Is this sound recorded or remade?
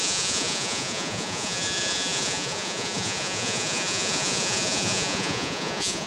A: remade